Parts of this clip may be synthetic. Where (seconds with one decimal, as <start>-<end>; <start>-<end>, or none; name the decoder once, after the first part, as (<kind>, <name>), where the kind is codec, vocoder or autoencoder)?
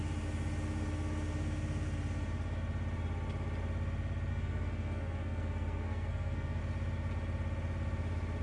4.3-6.6 (codec, SNAC)